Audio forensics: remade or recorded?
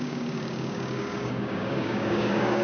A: remade